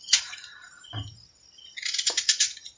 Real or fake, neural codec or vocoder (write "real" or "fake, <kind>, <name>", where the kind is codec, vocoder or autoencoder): real